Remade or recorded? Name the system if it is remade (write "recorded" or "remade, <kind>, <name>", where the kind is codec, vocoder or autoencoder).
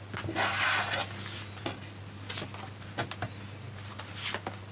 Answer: recorded